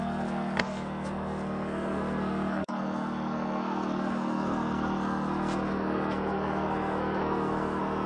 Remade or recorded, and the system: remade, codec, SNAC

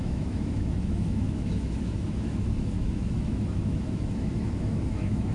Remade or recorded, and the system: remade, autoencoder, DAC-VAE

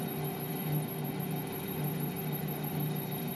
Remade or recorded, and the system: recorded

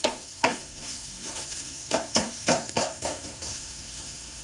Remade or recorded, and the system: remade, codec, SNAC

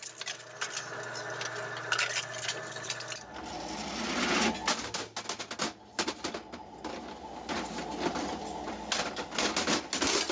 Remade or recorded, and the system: recorded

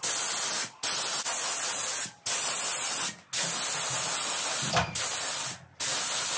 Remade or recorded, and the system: recorded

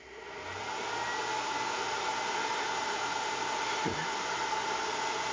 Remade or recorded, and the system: recorded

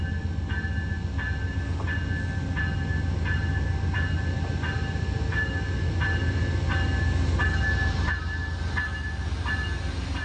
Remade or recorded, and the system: recorded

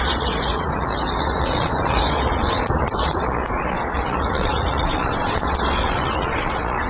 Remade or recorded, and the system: remade, vocoder, Vocos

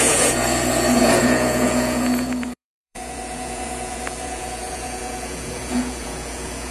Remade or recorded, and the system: remade, vocoder, Vocos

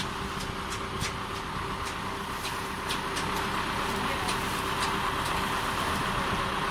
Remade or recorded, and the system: recorded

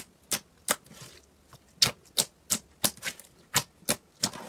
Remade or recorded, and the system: recorded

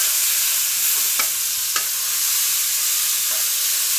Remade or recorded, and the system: recorded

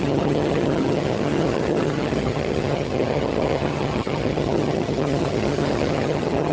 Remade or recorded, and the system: remade, vocoder, HiFi-GAN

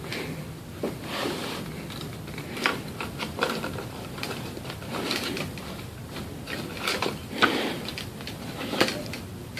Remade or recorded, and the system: remade, vocoder, BigVGAN v2